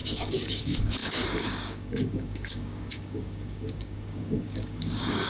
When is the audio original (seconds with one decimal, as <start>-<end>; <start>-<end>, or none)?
none